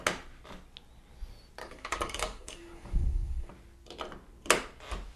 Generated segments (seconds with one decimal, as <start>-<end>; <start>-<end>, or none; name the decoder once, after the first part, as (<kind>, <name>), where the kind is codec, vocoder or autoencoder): 1.6-3.5 (codec, DAC)